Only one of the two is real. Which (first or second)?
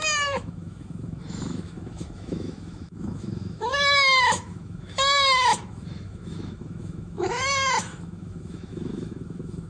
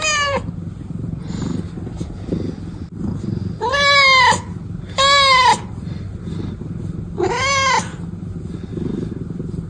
second